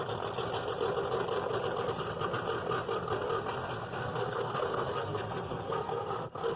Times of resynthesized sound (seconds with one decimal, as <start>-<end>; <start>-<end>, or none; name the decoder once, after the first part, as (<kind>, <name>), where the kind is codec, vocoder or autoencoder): 3.8-6.6 (codec, SNAC)